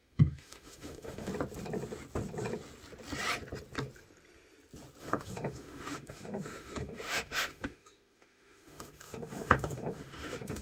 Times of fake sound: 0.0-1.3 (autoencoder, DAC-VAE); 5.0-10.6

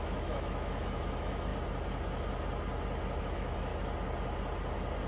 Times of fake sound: 0.0-1.5 (autoencoder, DAC-VAE); 3.2-3.7

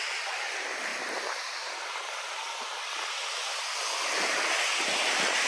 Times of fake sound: none

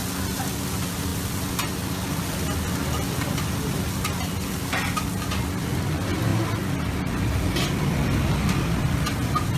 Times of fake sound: none

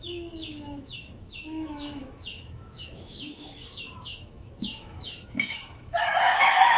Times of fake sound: 0.0-6.8 (autoencoder, DAC-VAE)